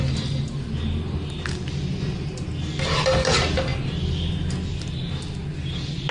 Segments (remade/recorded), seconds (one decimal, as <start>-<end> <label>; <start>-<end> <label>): 0.0-6.1 recorded